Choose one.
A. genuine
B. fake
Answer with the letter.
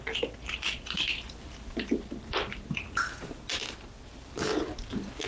A